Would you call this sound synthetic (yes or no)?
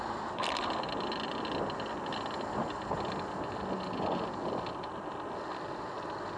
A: no